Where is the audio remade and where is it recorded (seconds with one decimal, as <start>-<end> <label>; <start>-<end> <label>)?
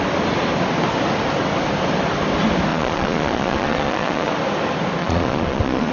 0.0-2.7 recorded; 2.7-4.3 remade; 4.3-5.0 recorded; 5.0-5.9 remade